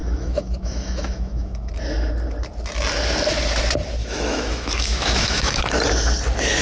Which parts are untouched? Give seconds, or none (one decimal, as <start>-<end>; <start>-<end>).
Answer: 1.7-4.0; 5.7-6.6